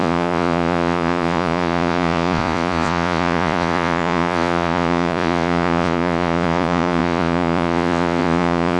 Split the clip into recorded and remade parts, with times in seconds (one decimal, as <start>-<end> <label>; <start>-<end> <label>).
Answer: 0.0-8.8 remade